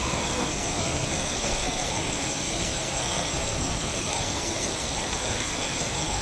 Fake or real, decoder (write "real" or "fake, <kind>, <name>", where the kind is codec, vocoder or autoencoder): fake, codec, SNAC